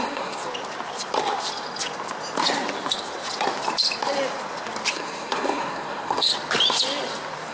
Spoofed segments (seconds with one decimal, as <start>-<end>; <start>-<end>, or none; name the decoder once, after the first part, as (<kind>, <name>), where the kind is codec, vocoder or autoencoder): 0.0-0.4 (codec, SNAC); 4.9-6.3